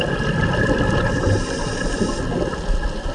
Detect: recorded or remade recorded